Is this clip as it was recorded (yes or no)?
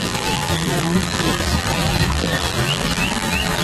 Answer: no